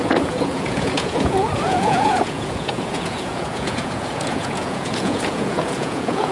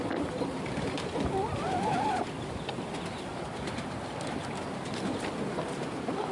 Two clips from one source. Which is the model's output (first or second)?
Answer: first